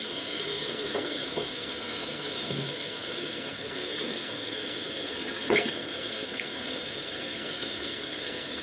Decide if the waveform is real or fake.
fake